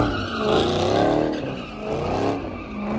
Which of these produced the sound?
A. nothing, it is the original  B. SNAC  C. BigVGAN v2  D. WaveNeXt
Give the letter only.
A